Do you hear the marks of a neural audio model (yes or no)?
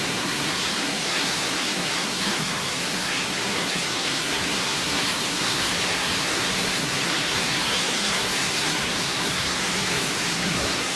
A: yes